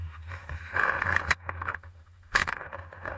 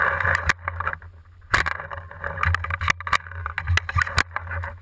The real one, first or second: second